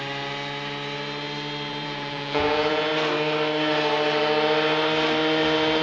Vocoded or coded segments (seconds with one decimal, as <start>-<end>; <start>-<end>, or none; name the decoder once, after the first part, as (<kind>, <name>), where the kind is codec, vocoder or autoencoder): 1.7-2.9 (vocoder, Vocos)